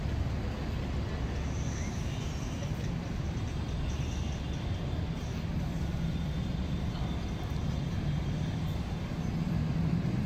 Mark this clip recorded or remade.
recorded